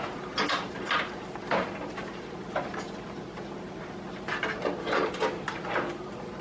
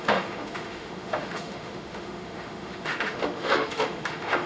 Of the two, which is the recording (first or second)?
first